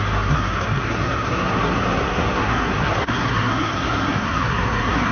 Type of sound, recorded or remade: remade